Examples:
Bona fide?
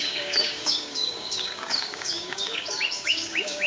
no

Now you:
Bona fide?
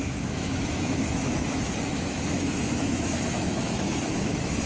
no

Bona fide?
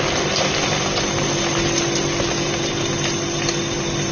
yes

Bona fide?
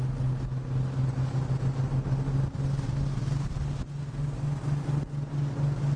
yes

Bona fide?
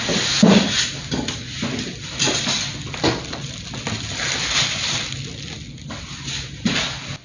yes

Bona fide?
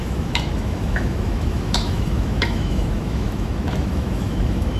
no